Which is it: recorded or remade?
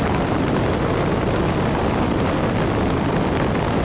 recorded